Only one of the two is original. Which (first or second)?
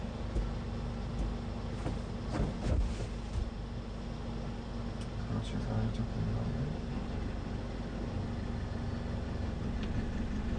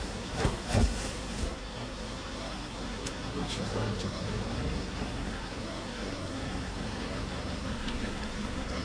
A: first